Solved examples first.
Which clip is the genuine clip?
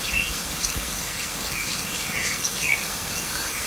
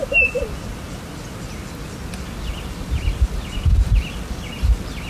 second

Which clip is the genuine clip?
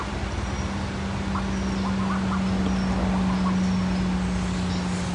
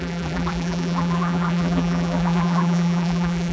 first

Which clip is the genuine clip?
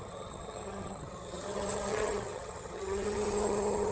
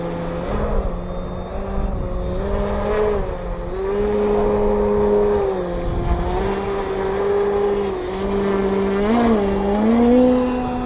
second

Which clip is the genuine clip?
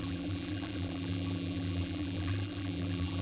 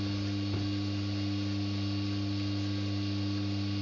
second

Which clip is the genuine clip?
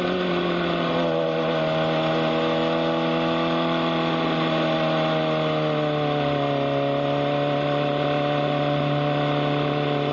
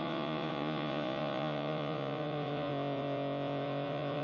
first